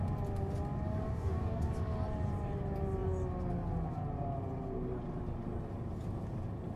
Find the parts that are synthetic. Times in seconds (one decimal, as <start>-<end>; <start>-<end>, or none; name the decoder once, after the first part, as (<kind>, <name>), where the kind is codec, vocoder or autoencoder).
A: 1.1-1.7 (codec, DAC)